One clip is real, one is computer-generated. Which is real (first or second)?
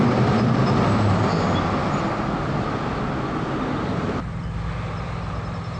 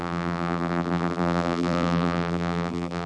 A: first